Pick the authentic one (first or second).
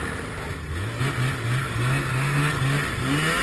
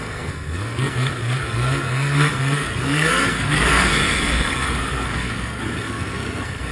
first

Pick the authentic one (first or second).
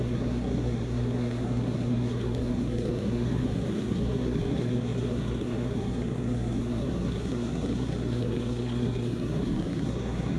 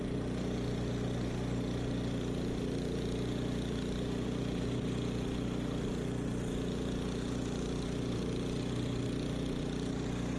second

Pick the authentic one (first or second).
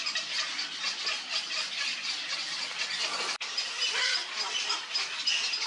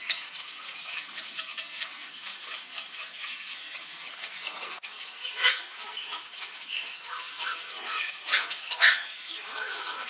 first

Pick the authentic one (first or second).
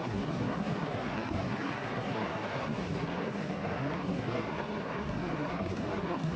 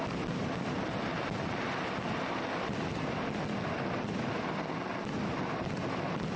second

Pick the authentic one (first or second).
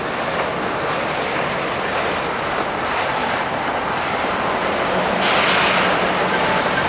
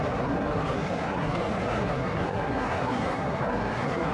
first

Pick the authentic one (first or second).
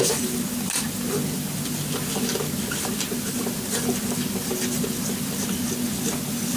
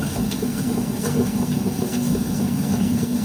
first